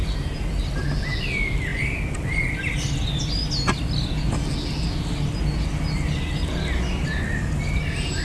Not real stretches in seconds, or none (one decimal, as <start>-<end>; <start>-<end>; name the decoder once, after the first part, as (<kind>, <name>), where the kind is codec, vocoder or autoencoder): none